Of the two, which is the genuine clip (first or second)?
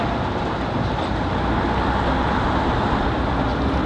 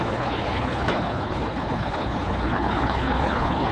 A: first